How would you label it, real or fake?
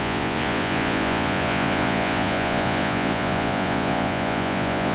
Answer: fake